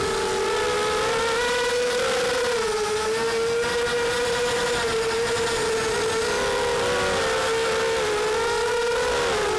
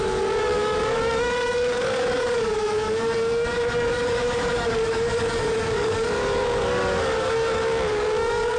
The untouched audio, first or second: first